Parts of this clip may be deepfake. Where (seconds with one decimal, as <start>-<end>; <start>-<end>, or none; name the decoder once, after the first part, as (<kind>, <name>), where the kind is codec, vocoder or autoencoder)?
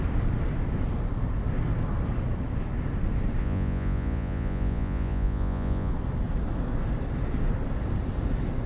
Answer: 3.4-5.9 (vocoder, Vocos)